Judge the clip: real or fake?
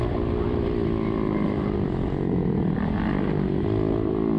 real